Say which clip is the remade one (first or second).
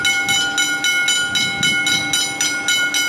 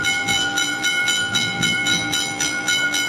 second